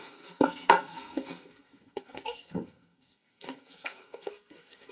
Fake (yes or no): yes